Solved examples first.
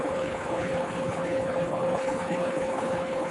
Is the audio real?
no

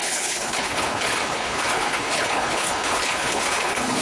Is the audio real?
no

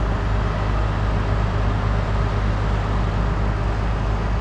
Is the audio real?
yes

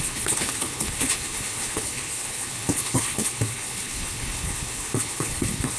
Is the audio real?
no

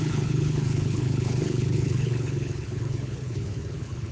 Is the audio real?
no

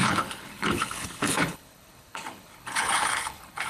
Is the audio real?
no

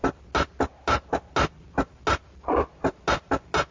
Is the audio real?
yes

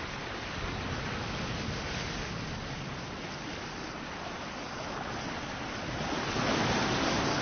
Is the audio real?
yes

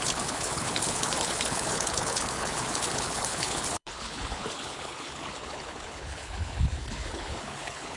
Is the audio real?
no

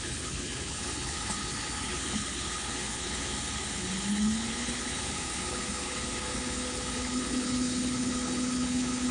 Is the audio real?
no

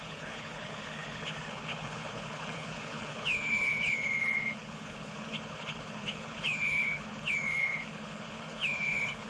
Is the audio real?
no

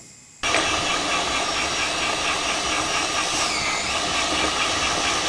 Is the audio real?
yes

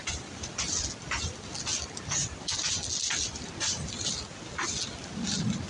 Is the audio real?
yes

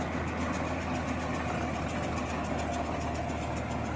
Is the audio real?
yes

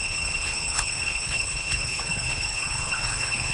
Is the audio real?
no